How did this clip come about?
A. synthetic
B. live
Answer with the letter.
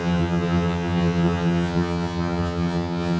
A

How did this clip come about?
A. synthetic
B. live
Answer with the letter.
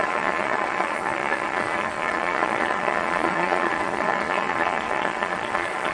A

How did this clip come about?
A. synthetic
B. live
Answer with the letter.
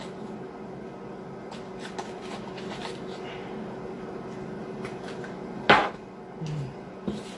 B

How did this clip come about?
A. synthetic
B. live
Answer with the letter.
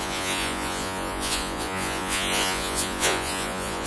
A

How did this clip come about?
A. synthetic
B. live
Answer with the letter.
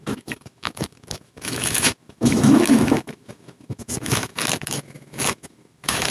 A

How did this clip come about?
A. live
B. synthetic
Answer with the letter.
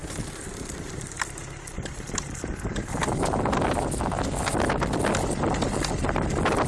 A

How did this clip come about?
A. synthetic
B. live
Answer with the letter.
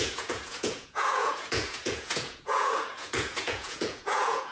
A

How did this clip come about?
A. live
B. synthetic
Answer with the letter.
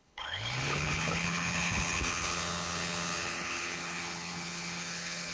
B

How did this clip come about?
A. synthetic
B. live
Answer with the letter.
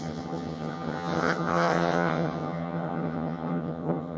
A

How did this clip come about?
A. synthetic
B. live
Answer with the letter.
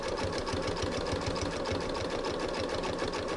B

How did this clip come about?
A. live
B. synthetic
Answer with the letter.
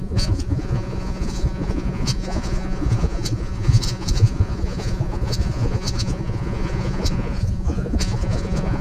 B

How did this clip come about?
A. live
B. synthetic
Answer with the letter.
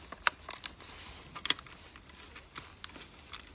A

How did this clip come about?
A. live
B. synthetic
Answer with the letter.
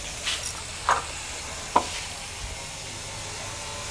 A